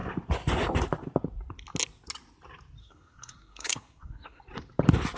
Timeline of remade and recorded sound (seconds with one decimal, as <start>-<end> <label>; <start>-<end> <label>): 0.0-2.8 recorded; 2.8-4.4 remade; 4.4-5.2 recorded